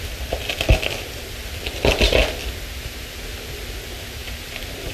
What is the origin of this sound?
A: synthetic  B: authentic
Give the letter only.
B